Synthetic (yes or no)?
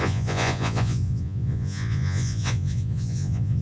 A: yes